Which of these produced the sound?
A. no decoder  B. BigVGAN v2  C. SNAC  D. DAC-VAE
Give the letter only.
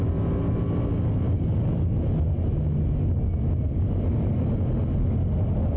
A